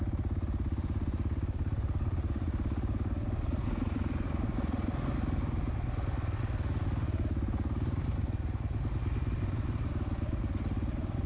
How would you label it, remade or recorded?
recorded